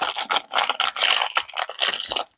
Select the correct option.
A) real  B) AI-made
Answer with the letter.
A